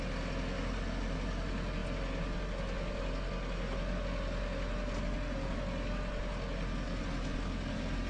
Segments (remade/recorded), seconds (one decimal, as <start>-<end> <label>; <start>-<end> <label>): 0.0-8.1 recorded